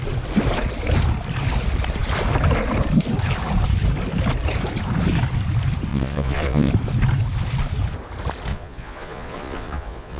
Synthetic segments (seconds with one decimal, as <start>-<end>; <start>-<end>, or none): 5.9-6.7; 8.5-10.2